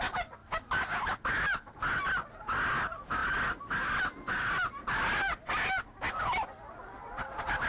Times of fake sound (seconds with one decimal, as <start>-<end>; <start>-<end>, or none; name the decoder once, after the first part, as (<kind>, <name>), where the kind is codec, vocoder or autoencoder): none